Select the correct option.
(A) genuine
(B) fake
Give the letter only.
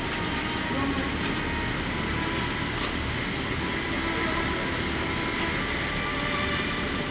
A